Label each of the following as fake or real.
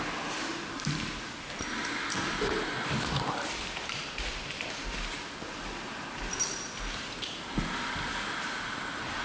real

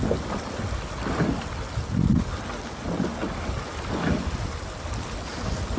real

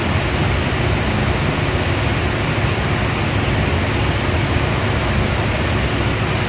real